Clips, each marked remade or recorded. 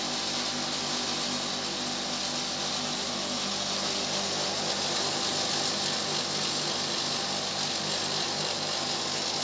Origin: recorded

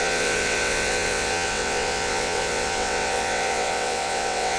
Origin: remade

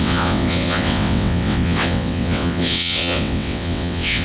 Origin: remade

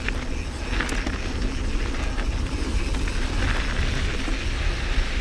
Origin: recorded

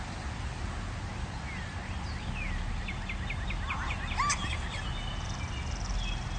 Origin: recorded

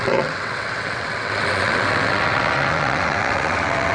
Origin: remade